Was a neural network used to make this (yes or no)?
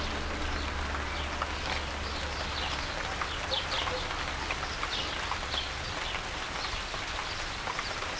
no